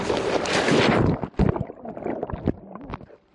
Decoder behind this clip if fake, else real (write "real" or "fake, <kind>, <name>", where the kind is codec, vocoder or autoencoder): real